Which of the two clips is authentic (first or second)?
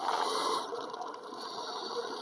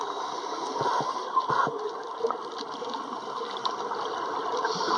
second